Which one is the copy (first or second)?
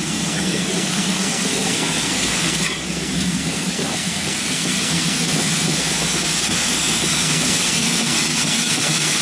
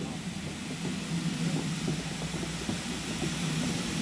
first